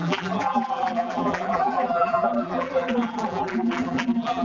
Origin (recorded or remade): remade